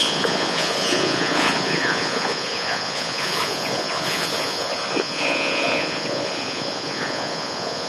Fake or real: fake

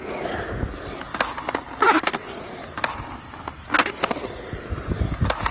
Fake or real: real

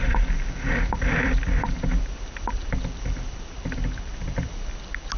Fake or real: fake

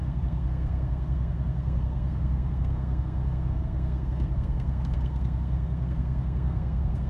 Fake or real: fake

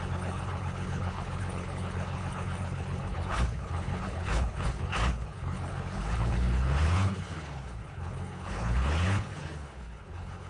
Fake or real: fake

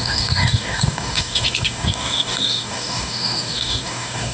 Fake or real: fake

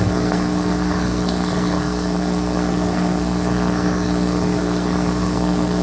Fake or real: fake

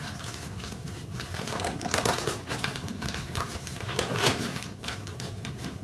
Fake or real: fake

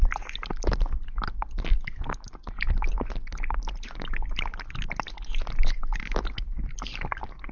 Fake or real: real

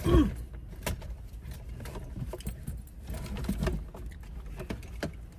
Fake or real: real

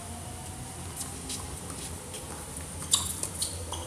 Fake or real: real